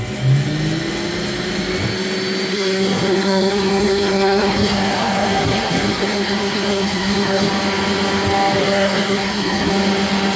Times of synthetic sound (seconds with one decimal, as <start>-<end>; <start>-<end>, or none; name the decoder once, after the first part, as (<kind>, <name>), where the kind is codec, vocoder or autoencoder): 2.5-7.5 (codec, SNAC); 8.6-9.7